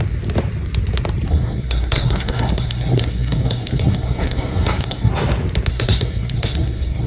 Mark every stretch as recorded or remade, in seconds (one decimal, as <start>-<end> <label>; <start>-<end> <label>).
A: 0.0-1.3 recorded; 1.3-5.1 remade; 5.1-5.7 recorded; 5.7-7.1 remade